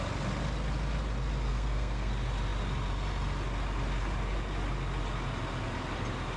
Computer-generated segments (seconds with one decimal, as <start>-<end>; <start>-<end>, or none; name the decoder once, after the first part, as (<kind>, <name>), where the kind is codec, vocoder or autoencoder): 1.5-2.1 (codec, SNAC)